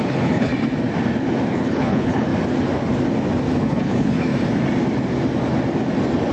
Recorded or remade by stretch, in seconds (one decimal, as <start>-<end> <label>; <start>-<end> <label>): 0.0-0.5 remade; 0.5-1.5 recorded; 1.5-2.3 remade; 2.3-3.6 recorded; 3.6-4.3 remade; 4.3-6.3 recorded